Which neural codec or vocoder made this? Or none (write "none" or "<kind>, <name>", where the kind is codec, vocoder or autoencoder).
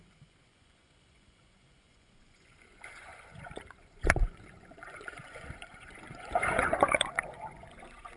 vocoder, Vocos